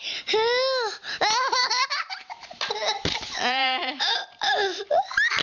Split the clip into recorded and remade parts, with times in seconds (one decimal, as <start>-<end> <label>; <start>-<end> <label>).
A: 0.0-1.6 recorded; 1.6-4.5 remade; 4.5-5.4 recorded